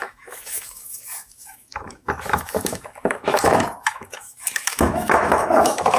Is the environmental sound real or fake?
fake